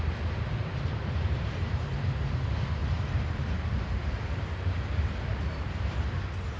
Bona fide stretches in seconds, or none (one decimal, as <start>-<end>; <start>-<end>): 0.0-0.7; 2.4-2.8; 4.8-5.3; 6.0-6.6